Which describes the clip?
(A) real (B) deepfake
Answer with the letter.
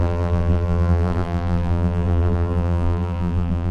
B